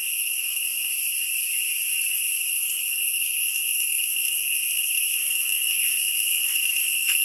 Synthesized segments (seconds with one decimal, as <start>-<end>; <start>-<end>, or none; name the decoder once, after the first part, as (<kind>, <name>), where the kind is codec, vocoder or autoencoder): 0.0-0.9 (codec, SNAC); 2.5-7.2